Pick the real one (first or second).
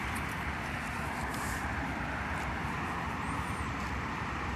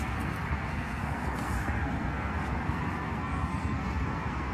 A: first